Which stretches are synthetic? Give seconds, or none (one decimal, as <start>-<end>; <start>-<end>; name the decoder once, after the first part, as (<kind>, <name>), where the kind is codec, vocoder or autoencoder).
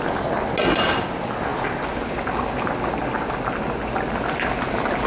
none